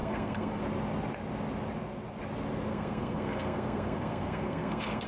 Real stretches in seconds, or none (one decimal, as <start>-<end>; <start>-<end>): 0.6-2.7